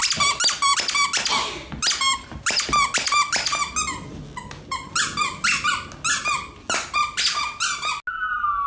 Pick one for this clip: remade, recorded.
recorded